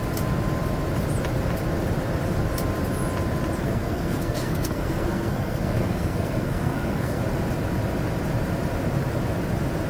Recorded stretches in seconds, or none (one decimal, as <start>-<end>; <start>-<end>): 0.0-3.6; 7.2-9.9